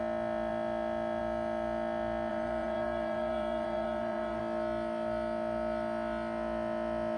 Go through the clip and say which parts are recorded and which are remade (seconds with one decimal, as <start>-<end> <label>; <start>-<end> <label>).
0.0-2.3 recorded; 2.3-4.4 remade; 4.4-7.2 recorded